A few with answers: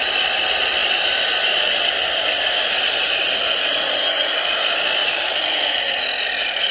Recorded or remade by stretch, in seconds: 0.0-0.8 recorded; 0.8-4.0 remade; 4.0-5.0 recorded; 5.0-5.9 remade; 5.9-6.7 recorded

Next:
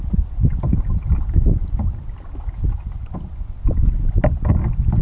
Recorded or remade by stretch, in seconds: 0.0-5.0 recorded

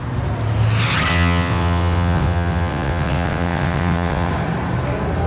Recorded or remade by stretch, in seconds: 0.0-1.1 recorded; 1.1-4.3 remade; 4.3-5.3 recorded